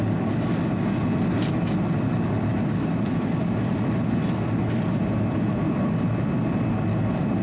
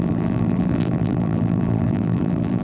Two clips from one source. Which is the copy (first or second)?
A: second